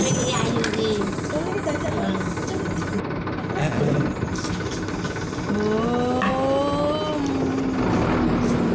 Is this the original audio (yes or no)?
yes